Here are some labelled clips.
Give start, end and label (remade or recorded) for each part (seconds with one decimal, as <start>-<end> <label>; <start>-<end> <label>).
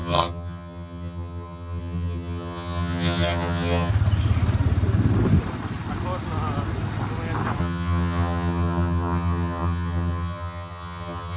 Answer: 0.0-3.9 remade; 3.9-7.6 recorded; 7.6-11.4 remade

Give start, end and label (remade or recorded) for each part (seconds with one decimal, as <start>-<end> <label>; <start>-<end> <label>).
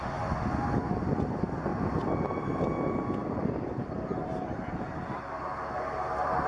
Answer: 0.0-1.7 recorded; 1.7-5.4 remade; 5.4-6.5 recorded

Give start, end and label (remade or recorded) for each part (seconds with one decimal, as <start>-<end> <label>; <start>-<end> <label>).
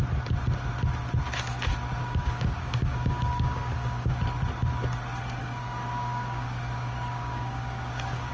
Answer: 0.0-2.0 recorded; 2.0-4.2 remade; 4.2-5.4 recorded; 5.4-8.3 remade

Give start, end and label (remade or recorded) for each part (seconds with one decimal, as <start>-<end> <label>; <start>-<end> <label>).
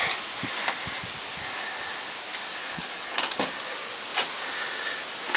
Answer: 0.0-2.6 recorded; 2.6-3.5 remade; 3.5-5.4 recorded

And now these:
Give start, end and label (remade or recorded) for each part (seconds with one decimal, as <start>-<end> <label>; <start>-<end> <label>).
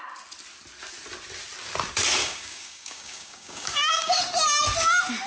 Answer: 0.0-2.2 recorded; 2.2-4.2 remade; 4.2-5.3 recorded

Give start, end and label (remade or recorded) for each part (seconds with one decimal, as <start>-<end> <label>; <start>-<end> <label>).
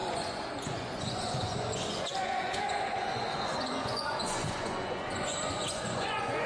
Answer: 0.0-6.5 remade